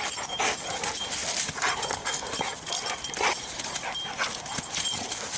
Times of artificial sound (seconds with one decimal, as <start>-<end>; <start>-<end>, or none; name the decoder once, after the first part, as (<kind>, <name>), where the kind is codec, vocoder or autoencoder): none